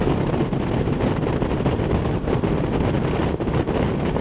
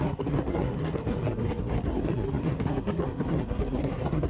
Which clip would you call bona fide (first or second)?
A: first